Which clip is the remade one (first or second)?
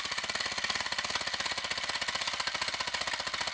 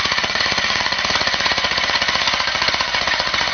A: second